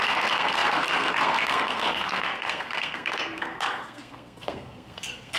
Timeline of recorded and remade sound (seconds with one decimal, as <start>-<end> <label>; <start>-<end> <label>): 0.0-5.4 remade